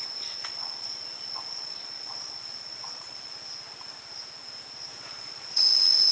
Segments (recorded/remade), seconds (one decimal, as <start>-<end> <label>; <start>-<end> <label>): 0.0-0.4 recorded; 0.4-3.3 remade; 3.3-4.9 recorded; 4.9-5.6 remade; 5.6-6.1 recorded